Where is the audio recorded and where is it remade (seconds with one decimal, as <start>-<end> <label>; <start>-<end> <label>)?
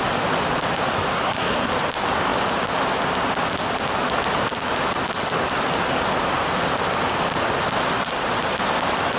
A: 0.0-1.1 recorded; 1.1-1.7 remade; 1.7-9.2 recorded